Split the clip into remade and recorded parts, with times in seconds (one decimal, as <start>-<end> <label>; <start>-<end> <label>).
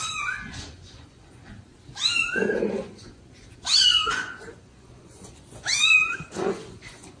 0.0-1.7 remade; 1.7-2.3 recorded; 2.3-7.2 remade